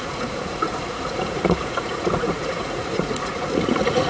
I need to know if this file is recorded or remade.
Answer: remade